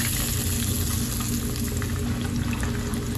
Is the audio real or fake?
real